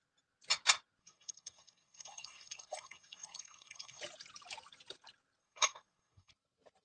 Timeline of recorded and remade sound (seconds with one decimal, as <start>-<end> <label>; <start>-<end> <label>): 0.0-1.0 recorded; 1.0-4.0 remade; 4.0-5.4 recorded; 5.4-6.3 remade; 6.3-6.8 recorded